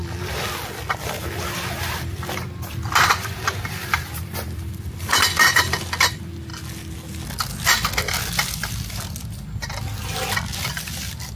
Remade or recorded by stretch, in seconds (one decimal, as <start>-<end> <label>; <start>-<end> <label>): 0.0-1.7 recorded; 1.7-6.5 remade; 6.5-10.7 recorded; 10.7-11.4 remade